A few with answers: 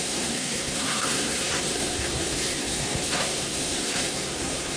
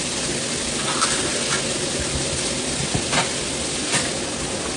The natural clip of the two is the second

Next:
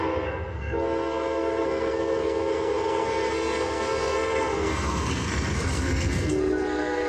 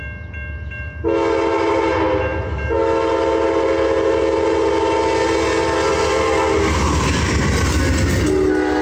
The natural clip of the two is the second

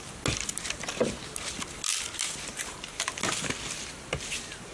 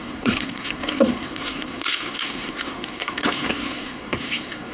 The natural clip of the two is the first